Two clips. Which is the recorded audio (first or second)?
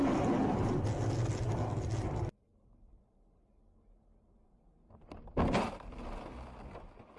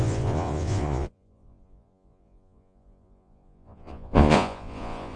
first